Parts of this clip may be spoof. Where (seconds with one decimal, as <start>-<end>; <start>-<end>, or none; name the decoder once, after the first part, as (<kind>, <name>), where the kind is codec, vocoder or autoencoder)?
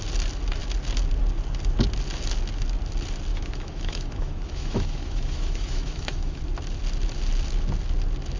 3.3-6.4 (autoencoder, DAC-VAE)